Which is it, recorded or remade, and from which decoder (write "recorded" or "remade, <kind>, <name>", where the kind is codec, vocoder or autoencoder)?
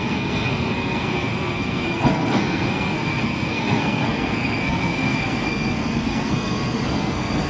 remade, codec, SNAC